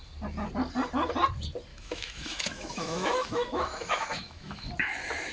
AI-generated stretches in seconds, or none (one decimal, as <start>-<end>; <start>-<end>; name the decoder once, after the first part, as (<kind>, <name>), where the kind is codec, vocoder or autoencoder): 1.7-4.7 (autoencoder, DAC-VAE)